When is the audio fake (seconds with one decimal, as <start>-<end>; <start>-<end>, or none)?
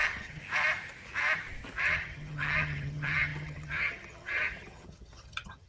0.0-0.4; 1.8-5.7